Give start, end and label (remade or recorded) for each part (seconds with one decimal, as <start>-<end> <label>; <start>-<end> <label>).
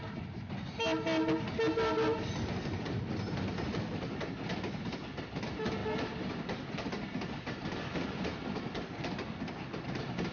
0.0-10.3 recorded